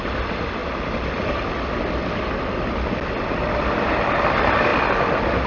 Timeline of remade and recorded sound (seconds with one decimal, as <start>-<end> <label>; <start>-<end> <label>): 0.0-5.5 recorded